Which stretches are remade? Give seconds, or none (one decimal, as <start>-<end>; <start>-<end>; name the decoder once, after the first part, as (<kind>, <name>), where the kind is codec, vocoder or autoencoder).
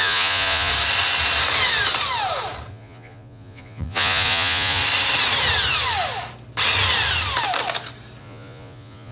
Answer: 0.0-0.7 (vocoder, Vocos); 2.7-4.8; 8.2-9.1